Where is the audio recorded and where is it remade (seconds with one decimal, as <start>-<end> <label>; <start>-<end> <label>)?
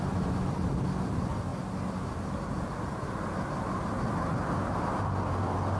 0.0-5.8 recorded